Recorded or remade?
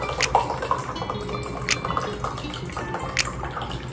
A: recorded